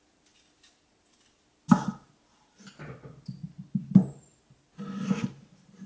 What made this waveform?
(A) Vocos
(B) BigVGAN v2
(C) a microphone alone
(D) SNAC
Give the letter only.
C